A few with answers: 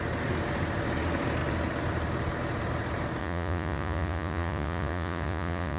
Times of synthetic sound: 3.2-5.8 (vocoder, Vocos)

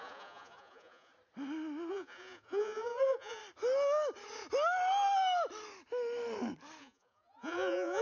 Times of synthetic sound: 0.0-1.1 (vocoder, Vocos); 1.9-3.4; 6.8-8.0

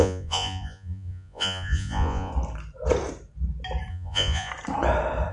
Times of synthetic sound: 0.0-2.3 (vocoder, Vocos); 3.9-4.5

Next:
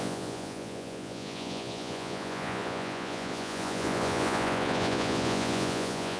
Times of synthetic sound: 0.0-6.2 (vocoder, Vocos)

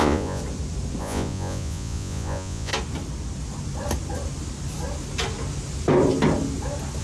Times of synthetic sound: 0.0-0.4 (vocoder, Vocos); 1.0-2.7

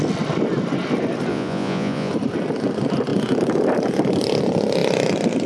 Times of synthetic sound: 1.3-2.1 (vocoder, Vocos)